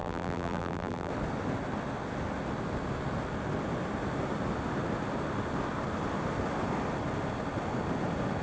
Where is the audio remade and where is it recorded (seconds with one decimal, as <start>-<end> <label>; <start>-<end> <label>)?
0.0-1.1 remade; 1.1-8.4 recorded